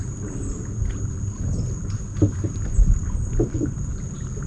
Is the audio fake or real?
real